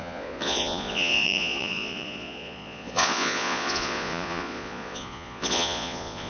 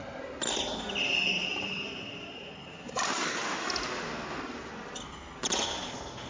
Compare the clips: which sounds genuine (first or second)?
second